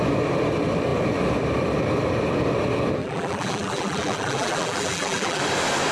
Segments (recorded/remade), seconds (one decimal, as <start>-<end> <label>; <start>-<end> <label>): 0.0-3.0 recorded; 3.0-5.4 remade; 5.4-5.9 recorded